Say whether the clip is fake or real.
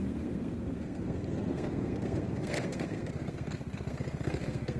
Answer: fake